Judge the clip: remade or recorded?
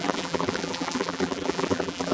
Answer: remade